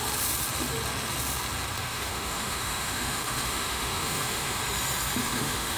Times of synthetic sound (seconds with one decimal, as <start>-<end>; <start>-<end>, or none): 1.8-4.6; 5.2-5.8